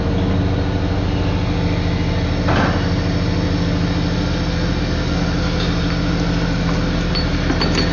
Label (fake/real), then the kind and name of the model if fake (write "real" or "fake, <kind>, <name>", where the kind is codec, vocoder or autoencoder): real